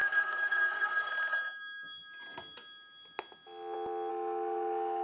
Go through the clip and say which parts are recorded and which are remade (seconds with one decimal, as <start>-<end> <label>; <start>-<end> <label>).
0.0-1.1 remade; 1.1-4.1 recorded; 4.1-5.0 remade